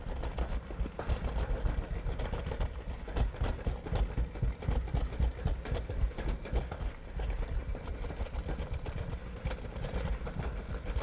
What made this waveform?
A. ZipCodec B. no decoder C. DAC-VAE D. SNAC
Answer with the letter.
B